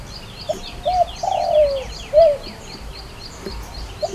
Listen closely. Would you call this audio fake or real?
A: real